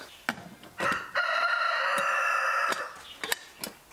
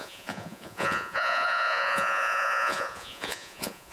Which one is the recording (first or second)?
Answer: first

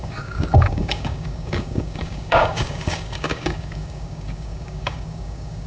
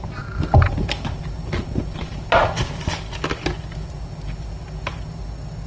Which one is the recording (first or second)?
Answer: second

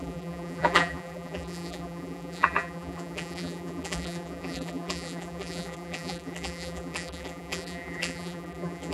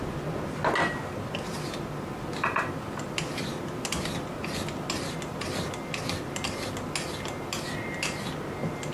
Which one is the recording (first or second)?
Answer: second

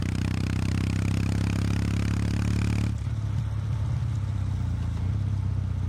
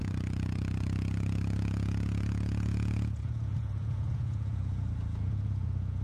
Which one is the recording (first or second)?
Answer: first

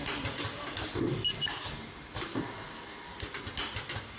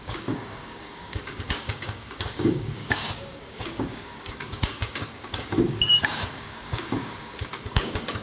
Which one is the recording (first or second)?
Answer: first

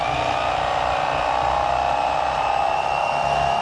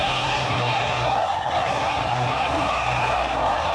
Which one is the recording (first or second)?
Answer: first